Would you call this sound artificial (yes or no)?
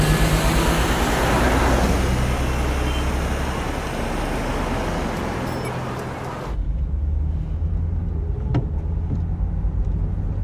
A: no